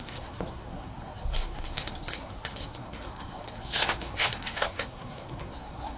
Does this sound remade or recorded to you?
remade